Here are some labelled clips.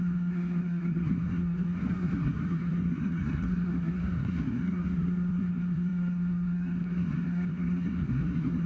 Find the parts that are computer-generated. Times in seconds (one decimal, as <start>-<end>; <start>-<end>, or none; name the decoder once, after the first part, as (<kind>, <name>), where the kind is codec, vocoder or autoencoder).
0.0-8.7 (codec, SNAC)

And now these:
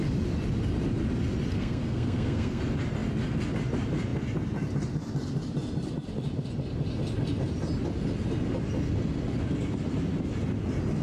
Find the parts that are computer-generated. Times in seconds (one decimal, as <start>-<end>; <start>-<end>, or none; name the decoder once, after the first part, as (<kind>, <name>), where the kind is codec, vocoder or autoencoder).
1.5-2.6 (codec, SNAC)

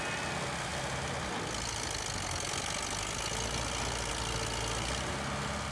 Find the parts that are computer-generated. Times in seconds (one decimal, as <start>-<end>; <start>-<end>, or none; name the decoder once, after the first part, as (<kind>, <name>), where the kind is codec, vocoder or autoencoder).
none

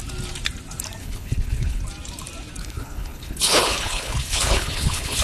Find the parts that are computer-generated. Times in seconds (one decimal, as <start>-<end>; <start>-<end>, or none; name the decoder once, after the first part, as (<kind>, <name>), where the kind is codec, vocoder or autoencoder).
1.0-1.8 (codec, HILCodec); 2.6-5.2

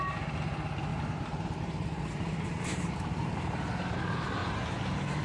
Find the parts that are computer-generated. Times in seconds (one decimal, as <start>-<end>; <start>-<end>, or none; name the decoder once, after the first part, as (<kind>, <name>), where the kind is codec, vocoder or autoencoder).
0.9-4.0 (vocoder, BigVGAN v2); 4.4-5.2

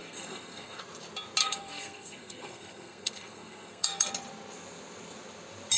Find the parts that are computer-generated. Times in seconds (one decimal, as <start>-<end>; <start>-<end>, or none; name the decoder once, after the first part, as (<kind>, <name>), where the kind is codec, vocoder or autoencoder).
0.0-0.8 (codec, SNAC); 1.4-4.1

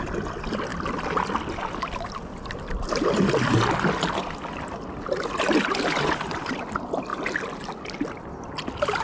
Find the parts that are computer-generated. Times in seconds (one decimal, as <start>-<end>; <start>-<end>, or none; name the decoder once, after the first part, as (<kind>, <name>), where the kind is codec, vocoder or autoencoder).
none